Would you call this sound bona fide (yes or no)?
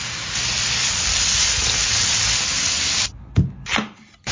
yes